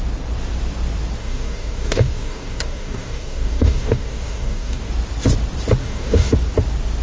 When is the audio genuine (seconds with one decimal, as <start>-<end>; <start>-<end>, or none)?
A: 0.0-1.2; 4.9-5.8; 6.3-7.0